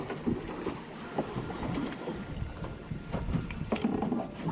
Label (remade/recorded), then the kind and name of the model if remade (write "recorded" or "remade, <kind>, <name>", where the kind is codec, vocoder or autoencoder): recorded